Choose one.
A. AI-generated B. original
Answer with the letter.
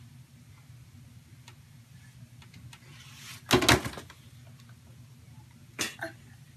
B